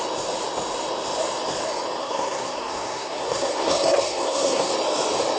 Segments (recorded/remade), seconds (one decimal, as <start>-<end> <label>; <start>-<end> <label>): 0.0-2.0 recorded; 2.0-4.7 remade; 4.7-5.4 recorded